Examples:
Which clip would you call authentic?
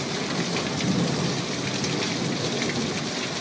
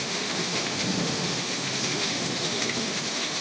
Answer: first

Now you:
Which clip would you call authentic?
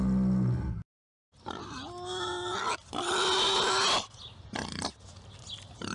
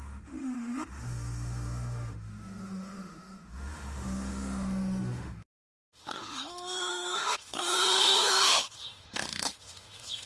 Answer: first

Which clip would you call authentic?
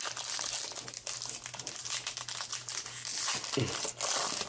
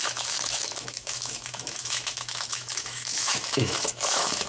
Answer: first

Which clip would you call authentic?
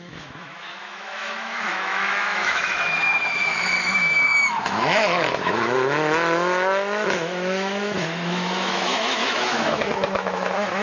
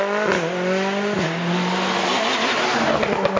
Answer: second